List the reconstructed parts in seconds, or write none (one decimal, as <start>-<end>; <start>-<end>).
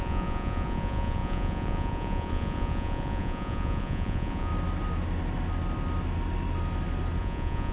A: 0.0-4.5; 7.2-7.7